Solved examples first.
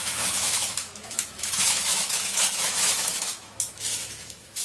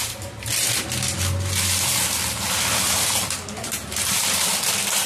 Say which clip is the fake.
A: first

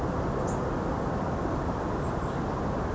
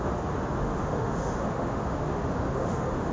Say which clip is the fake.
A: second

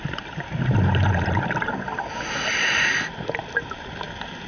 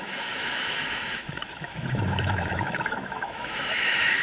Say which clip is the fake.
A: second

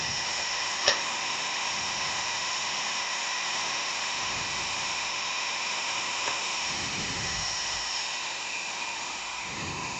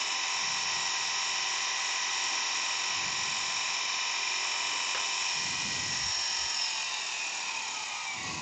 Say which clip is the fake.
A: first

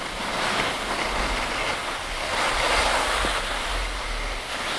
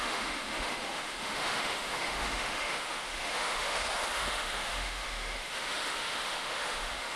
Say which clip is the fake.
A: second